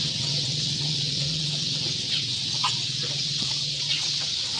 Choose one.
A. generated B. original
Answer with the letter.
A